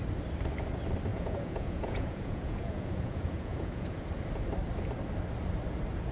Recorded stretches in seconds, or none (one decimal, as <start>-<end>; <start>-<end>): 0.0-1.1; 4.1-6.1